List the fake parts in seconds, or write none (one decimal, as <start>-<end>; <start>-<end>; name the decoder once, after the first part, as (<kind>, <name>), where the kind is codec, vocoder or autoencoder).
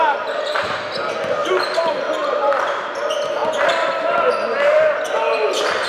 none